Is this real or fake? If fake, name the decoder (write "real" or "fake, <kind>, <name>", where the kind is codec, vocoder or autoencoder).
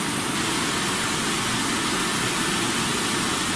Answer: real